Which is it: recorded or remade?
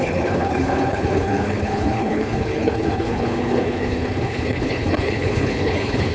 remade